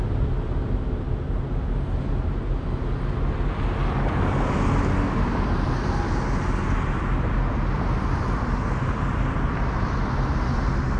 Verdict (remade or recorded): recorded